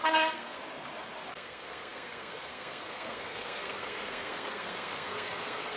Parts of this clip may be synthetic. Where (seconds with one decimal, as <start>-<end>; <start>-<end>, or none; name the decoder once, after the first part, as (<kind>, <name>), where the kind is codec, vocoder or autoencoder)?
0.0-0.6 (codec, SNAC); 1.3-5.8